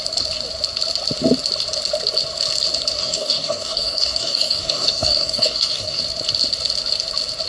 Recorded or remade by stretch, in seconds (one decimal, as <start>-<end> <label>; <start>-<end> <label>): 0.0-3.0 recorded; 3.0-6.0 remade; 6.0-7.5 recorded